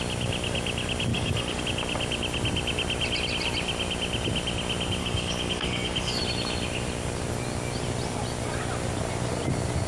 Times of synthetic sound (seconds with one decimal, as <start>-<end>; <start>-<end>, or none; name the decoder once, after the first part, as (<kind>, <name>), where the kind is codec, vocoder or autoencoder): 1.1-1.6 (codec, DAC); 5.0-6.2